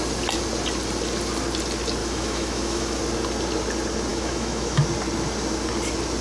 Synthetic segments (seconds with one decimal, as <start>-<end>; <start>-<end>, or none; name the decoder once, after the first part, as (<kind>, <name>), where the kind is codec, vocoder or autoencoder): 2.0-3.0 (autoencoder, DAC-VAE); 4.1-4.8